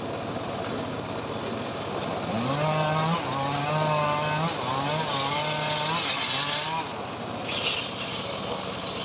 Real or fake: real